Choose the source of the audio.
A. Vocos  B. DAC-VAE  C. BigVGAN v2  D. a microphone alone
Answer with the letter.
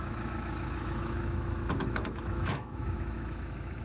B